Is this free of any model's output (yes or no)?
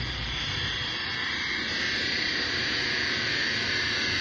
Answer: yes